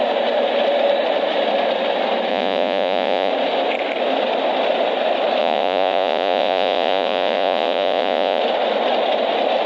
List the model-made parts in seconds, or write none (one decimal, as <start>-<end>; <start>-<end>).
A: 2.3-3.3; 5.4-8.4